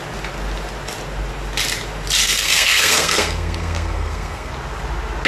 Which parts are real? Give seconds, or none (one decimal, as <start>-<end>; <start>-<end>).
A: 0.0-2.2; 4.5-5.3